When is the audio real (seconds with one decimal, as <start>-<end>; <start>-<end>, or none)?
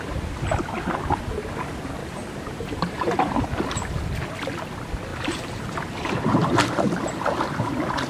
0.0-2.0; 3.5-5.1; 6.7-8.1